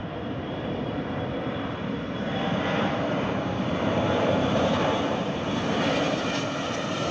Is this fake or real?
fake